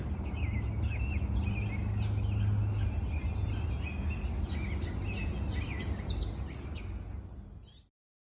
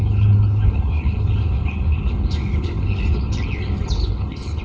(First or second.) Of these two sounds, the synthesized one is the second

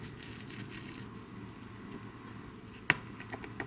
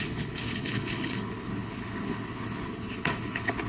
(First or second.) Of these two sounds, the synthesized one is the second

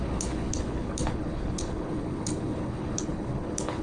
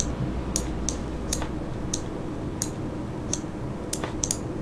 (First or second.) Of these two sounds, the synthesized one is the first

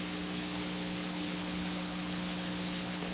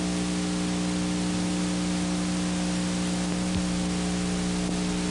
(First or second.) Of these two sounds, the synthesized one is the first